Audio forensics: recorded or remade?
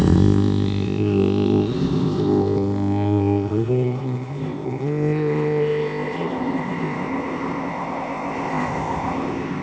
remade